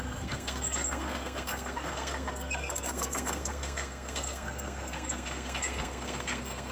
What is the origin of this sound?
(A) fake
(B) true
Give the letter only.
A